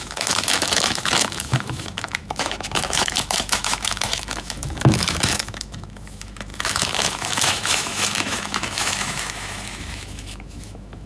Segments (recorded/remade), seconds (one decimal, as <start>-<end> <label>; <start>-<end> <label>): 0.0-11.1 remade